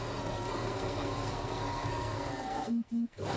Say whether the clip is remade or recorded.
remade